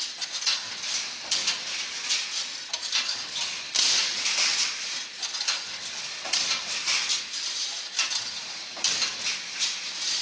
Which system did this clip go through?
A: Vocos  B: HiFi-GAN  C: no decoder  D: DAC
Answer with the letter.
C